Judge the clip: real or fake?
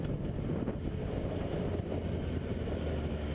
real